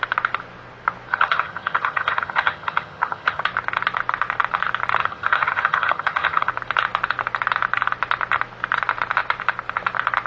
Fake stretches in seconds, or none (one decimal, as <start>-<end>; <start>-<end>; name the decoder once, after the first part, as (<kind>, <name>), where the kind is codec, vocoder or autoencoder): 1.1-3.4 (vocoder, HiFi-GAN); 5.0-6.5